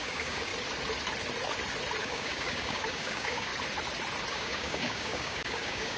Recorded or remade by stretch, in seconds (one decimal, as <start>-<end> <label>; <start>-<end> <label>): 0.0-0.5 remade; 0.5-2.0 recorded; 2.0-3.5 remade; 3.5-4.3 recorded; 4.3-6.0 remade